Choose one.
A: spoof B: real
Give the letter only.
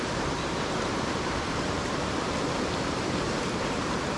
A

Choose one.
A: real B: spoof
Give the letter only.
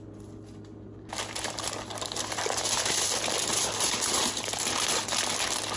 A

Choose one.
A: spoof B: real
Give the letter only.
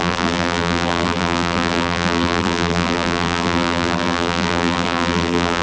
A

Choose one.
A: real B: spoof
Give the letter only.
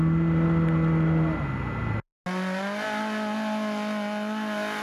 A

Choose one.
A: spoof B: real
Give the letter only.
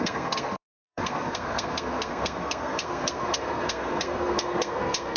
A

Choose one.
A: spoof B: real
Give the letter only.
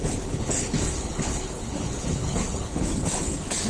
A